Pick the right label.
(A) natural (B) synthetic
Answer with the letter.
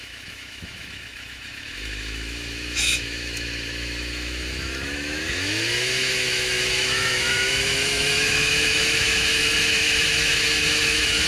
B